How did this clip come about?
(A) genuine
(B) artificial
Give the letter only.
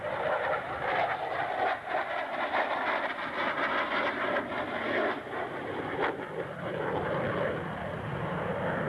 A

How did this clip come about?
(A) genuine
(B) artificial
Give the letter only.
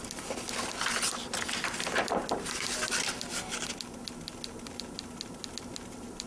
A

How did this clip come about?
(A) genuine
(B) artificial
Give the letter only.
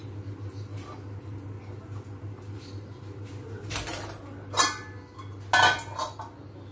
A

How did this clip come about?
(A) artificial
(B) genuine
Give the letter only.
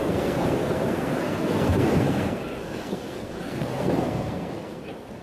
A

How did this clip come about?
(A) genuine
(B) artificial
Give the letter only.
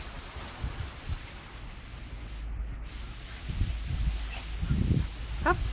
A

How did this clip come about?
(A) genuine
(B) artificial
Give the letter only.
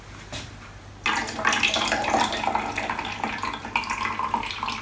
A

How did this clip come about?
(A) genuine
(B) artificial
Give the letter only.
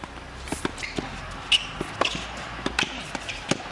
A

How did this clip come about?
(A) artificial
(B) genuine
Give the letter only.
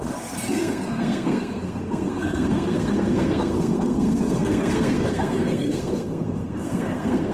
A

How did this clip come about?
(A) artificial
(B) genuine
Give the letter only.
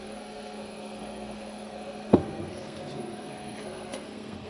A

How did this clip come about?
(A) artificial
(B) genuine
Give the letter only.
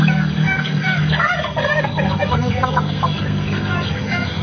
A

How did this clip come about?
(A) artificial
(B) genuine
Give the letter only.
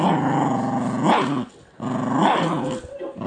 B